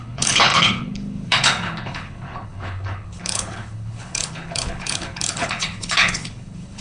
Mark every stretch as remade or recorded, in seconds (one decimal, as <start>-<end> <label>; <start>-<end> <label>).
0.0-6.8 remade